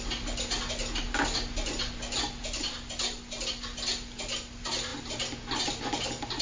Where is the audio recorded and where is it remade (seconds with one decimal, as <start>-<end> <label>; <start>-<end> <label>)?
0.0-6.4 recorded